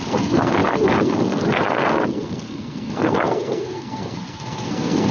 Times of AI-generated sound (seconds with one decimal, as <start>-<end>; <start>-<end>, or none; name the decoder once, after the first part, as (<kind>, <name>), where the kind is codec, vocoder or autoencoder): 0.0-5.1 (codec, SNAC)